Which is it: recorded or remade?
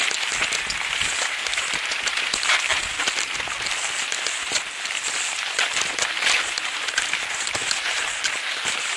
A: recorded